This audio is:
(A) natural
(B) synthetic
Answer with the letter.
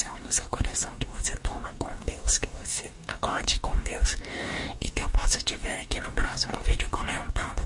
B